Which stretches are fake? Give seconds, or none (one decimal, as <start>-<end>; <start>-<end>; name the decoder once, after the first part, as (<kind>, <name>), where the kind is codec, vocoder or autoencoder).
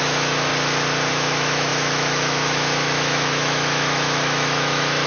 0.0-0.5 (autoencoder, DAC-VAE); 1.1-5.1